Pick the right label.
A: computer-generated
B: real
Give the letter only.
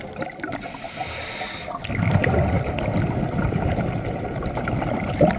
B